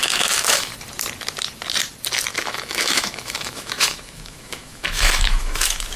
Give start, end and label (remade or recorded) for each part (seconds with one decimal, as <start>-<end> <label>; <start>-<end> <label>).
0.0-0.7 remade; 0.7-2.3 recorded; 2.3-6.0 remade